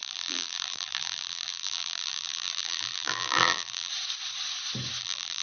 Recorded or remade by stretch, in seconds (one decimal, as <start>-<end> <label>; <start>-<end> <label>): 0.0-3.9 remade; 3.9-5.0 recorded; 5.0-5.4 remade